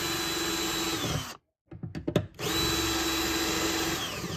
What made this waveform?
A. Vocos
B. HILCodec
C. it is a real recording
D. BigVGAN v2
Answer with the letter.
C